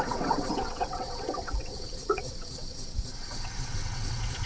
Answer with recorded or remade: remade